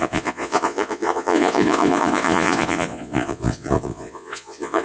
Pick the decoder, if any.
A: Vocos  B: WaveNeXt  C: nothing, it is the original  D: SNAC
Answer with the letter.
A